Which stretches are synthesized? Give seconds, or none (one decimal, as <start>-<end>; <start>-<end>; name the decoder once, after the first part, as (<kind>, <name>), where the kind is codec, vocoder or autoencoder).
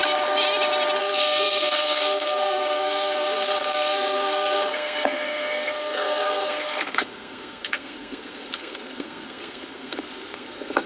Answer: 1.0-10.9 (codec, SNAC)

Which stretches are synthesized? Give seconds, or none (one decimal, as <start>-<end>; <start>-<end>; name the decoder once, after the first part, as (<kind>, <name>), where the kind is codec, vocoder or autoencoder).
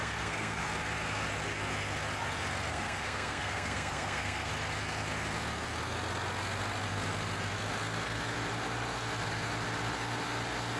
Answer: 0.0-0.6 (codec, SNAC); 2.7-4.5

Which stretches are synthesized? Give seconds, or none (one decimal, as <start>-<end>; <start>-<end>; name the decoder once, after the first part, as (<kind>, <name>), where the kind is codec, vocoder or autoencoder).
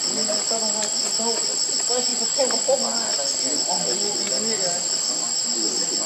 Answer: none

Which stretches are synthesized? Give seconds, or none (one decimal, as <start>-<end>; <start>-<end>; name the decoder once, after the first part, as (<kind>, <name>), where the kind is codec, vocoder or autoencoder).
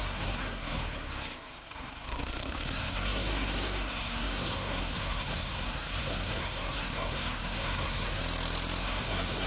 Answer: 0.0-8.2 (codec, SNAC); 8.8-9.5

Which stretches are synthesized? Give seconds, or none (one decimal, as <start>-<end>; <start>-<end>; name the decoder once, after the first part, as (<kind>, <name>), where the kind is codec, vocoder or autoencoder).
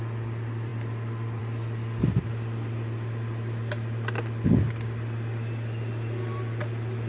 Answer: none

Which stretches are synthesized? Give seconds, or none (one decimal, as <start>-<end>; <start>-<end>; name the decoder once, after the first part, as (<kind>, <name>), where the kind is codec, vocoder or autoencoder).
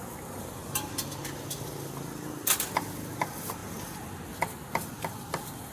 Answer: none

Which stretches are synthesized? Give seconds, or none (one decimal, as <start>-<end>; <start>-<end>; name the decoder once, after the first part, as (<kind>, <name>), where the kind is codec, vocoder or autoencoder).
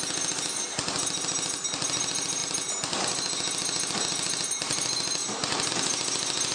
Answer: none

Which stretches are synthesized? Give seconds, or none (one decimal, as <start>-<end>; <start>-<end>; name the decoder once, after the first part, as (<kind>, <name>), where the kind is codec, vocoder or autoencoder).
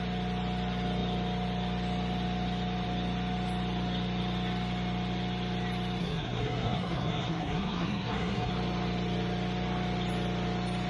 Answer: 6.0-8.5 (codec, SNAC)